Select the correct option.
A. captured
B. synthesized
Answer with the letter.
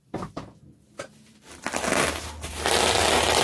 A